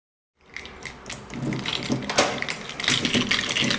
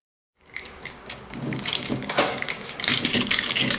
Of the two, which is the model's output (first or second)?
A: second